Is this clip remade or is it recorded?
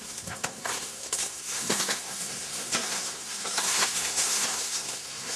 remade